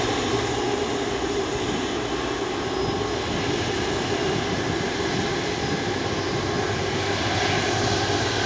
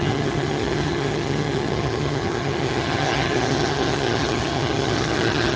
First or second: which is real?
first